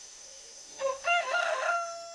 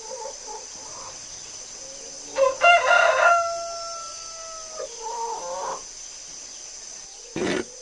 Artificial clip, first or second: first